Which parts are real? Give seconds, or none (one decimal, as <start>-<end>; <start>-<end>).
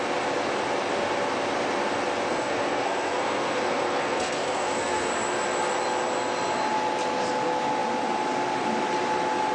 0.0-2.3; 5.1-9.5